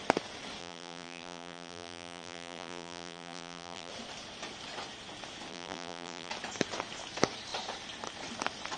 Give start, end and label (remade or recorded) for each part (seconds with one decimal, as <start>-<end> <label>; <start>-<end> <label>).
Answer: 0.0-0.6 recorded; 0.6-3.9 remade; 3.9-5.5 recorded; 5.5-6.3 remade; 6.3-8.8 recorded